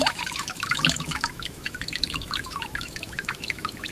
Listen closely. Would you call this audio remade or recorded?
remade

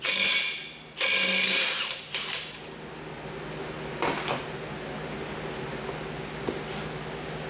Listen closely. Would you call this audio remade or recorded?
recorded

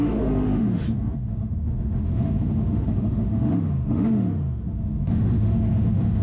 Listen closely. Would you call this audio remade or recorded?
remade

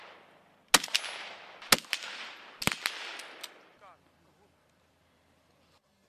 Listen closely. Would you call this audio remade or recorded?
recorded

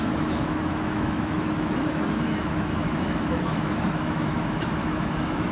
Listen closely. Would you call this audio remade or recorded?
remade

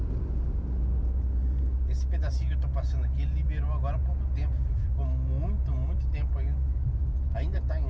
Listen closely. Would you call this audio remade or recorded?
recorded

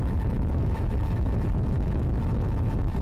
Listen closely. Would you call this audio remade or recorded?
remade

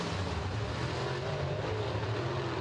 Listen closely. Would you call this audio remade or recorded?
recorded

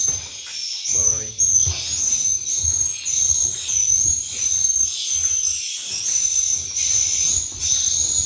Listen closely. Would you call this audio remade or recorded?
recorded